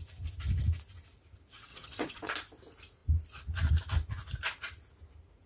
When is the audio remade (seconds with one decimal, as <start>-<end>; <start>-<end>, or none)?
1.7-2.3